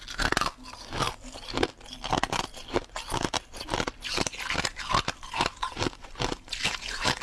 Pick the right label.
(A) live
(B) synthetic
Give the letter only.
A